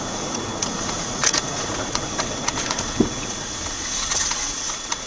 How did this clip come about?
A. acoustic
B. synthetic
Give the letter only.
B